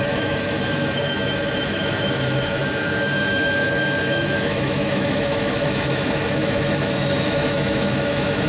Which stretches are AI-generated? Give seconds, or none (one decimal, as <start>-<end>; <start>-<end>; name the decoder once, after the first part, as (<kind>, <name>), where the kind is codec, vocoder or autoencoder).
0.0-8.5 (autoencoder, DAC-VAE)